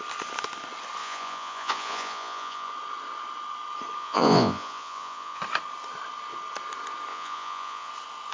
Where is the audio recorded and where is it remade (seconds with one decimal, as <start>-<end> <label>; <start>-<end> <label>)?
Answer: 0.0-1.0 recorded; 1.0-2.7 remade; 2.7-4.0 recorded; 4.0-5.4 remade; 5.4-7.1 recorded; 7.1-7.9 remade; 7.9-8.3 recorded